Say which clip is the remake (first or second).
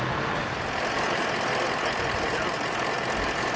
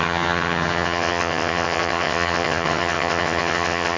second